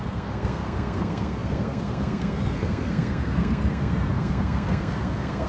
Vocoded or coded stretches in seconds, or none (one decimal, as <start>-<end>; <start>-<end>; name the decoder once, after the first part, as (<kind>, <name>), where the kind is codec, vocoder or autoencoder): 0.0-5.5 (codec, SNAC)